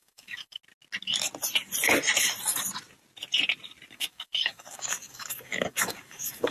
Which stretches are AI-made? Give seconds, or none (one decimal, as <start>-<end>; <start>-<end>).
0.0-0.6; 3.9-6.5